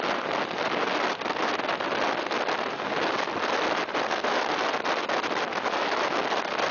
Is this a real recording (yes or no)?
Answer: yes